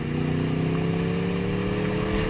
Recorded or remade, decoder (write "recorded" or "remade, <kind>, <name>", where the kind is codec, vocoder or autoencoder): recorded